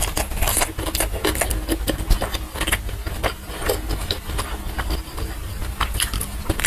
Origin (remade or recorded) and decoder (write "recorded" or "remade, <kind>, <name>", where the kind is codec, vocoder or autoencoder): recorded